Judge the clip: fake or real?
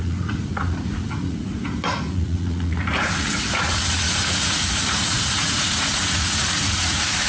fake